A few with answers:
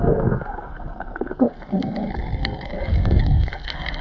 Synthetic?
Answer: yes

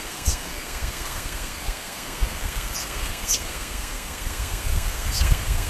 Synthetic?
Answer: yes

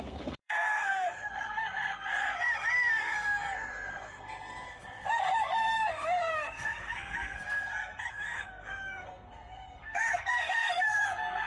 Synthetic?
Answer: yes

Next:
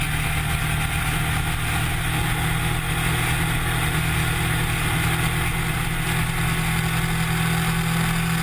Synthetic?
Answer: no